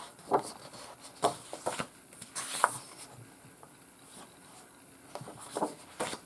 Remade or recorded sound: recorded